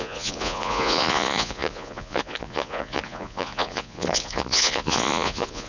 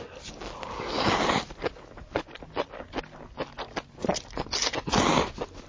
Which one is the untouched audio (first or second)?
second